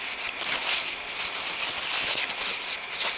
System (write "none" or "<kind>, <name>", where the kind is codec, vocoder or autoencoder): none